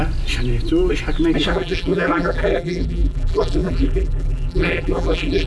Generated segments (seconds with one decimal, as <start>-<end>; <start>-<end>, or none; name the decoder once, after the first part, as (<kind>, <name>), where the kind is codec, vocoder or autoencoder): 1.5-5.5 (vocoder, BigVGAN v2)